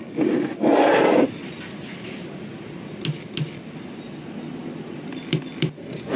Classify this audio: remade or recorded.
recorded